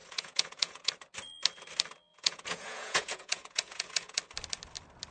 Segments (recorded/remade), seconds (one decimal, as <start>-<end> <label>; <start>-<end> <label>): 0.0-0.9 remade; 0.9-2.1 recorded; 2.1-4.2 remade; 4.2-5.1 recorded